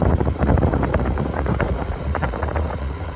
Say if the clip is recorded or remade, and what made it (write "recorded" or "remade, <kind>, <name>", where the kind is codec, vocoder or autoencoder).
remade, vocoder, Vocos